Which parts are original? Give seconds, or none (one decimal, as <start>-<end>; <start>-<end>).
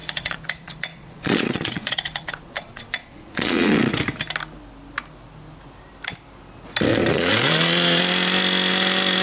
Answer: 3.9-6.9; 8.0-9.2